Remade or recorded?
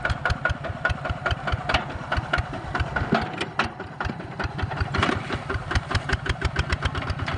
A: remade